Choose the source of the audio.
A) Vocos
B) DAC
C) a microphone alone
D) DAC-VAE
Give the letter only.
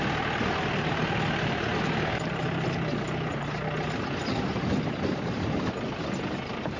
C